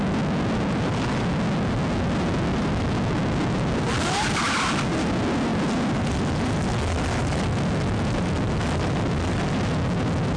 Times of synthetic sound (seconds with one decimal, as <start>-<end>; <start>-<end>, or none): none